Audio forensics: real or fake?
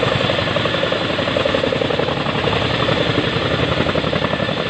real